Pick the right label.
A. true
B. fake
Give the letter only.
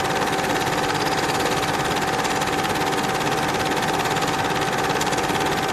A